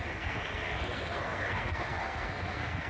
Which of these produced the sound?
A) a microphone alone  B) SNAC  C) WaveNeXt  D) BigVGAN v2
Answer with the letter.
B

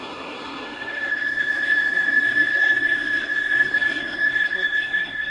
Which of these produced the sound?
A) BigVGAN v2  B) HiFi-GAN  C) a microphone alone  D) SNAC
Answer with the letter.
D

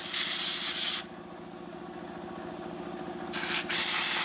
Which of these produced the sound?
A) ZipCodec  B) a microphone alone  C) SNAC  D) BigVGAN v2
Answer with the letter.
B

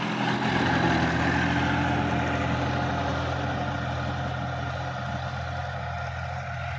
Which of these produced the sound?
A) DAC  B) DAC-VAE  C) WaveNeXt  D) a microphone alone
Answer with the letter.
D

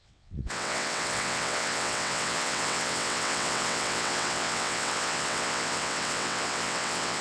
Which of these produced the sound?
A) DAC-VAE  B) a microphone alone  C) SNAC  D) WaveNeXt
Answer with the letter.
D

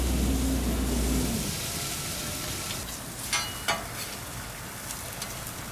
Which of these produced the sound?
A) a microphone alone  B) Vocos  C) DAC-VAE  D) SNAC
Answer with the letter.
A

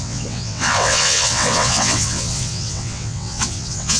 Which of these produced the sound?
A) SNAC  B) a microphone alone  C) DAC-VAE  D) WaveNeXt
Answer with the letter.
D